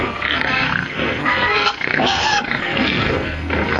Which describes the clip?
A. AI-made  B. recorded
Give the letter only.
A